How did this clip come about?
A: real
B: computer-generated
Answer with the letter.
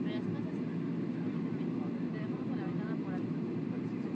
A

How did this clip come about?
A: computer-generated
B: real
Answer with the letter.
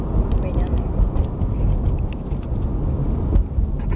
B